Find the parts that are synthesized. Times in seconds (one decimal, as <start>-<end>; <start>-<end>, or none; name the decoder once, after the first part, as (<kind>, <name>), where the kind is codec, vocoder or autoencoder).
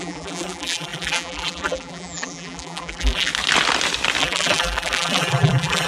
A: 0.0-3.3 (vocoder, BigVGAN v2); 4.2-5.9